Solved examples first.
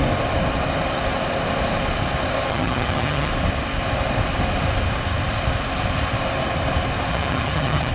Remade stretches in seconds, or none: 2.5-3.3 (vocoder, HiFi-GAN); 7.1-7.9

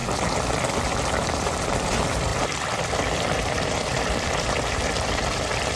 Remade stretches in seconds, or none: 0.8-5.8 (vocoder, BigVGAN v2)